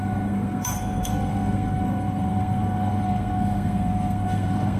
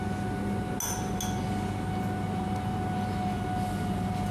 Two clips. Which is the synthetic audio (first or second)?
first